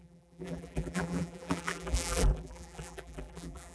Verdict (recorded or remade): remade